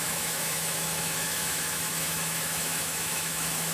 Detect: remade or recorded remade